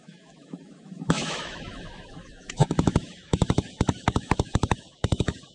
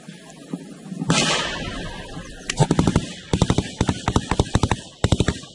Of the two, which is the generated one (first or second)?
first